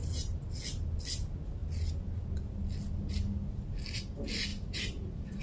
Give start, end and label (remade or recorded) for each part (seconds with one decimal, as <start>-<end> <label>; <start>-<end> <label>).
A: 0.0-0.5 remade; 0.5-4.5 recorded; 4.5-5.4 remade